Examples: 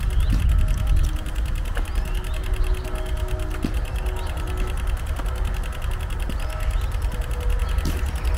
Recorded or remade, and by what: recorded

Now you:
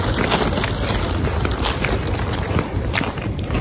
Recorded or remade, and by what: recorded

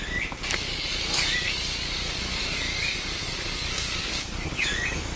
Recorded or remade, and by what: remade, codec, DAC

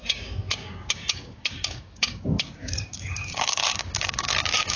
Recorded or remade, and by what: remade, codec, DAC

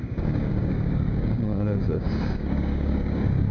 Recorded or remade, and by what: remade, codec, DAC